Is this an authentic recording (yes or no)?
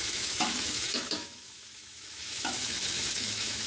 no